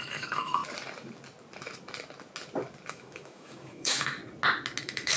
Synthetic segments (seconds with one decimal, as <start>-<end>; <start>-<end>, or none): 0.0-0.6; 2.9-4.2; 4.8-5.2